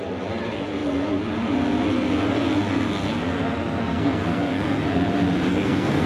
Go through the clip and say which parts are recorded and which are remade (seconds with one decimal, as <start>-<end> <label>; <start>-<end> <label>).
0.0-3.8 recorded; 3.8-4.8 remade; 4.8-5.5 recorded; 5.5-6.1 remade